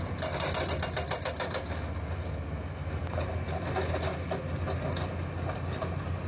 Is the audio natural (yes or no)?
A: yes